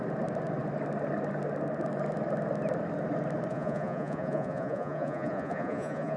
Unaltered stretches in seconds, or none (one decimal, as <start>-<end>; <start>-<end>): 0.0-3.5